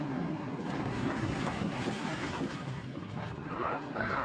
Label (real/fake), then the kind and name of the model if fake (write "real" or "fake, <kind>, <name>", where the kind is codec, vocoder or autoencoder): fake, codec, SNAC